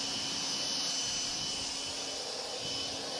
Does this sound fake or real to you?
real